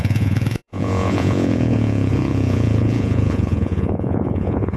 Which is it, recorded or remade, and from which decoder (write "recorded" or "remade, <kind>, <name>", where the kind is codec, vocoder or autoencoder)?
remade, vocoder, Vocos